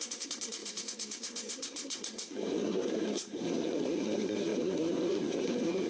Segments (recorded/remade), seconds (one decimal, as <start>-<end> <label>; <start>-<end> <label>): 0.0-5.9 remade